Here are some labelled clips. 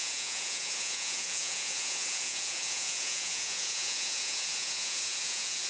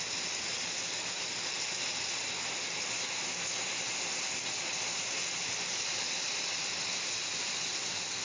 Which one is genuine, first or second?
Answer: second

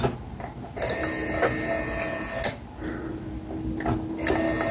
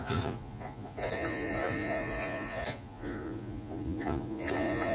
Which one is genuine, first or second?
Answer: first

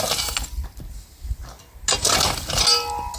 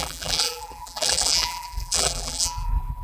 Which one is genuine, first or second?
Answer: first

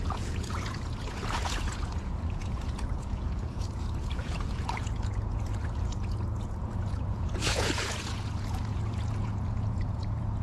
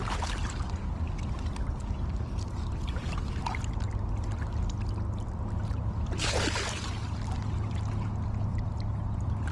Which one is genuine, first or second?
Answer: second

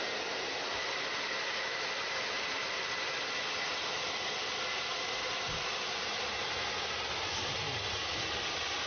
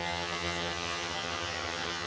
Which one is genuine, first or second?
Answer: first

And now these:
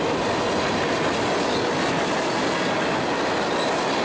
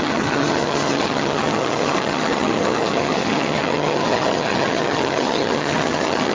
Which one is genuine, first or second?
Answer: first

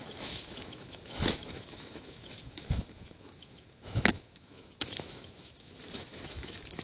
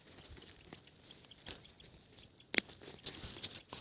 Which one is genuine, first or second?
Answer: second